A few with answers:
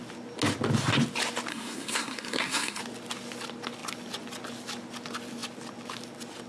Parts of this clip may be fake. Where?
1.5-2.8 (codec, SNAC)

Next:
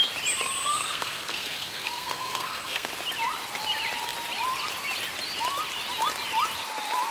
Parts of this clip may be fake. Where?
0.7-2.9 (codec, SNAC)

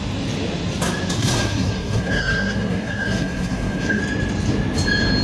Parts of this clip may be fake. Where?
1.2-4.0 (codec, SNAC)